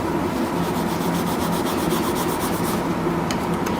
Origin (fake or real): real